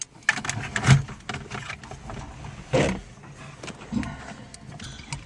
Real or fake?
real